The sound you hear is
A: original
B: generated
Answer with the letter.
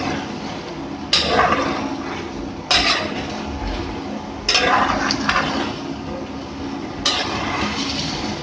A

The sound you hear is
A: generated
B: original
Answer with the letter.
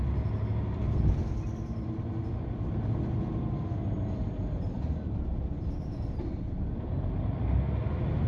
B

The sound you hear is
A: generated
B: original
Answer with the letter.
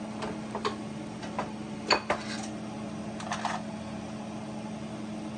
B